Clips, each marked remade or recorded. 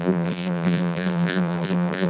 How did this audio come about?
remade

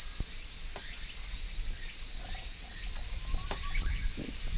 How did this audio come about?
recorded